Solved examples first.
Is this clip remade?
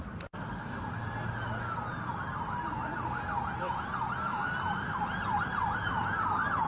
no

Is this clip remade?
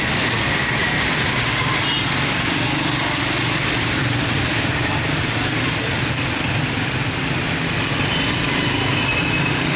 no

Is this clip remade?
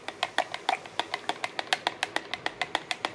no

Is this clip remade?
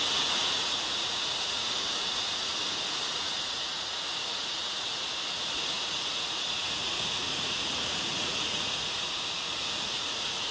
yes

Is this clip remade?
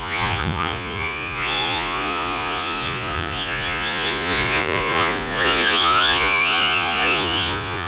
yes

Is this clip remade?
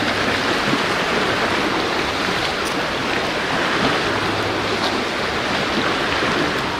no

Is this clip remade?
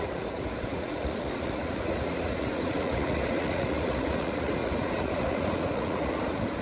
yes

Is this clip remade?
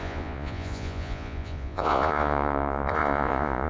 yes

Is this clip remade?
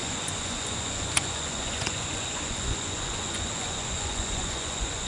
yes